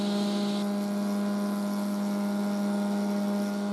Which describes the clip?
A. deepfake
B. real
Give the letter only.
B